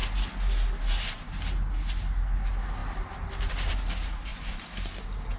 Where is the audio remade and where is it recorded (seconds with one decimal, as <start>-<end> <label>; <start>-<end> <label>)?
0.0-5.4 recorded